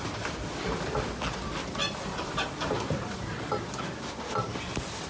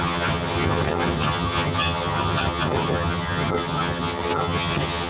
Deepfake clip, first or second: second